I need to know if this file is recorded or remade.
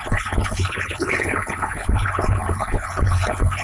remade